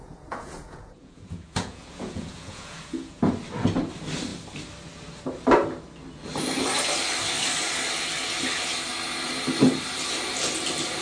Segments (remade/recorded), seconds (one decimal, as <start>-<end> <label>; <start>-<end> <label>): 0.0-3.2 remade; 3.2-11.0 recorded